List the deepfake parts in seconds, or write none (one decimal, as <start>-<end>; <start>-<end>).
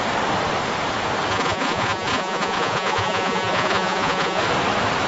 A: 1.3-4.4